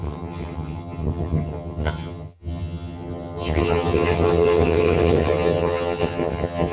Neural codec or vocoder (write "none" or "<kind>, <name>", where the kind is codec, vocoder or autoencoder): vocoder, HiFi-GAN